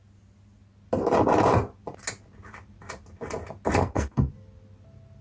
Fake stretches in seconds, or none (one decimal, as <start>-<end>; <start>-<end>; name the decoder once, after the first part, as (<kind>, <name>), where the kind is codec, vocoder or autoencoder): 3.8-4.3 (codec, SNAC)